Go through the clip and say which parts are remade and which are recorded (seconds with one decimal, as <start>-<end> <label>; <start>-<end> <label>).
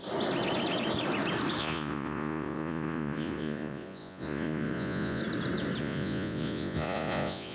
0.0-1.6 recorded; 1.6-5.2 remade; 5.2-5.8 recorded; 5.8-7.5 remade